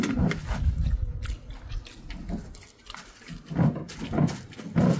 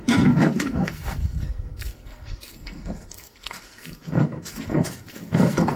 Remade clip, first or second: second